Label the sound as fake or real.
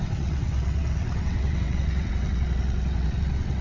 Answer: fake